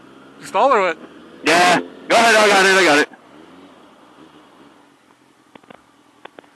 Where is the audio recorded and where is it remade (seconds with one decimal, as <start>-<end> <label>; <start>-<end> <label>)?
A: 0.0-6.5 recorded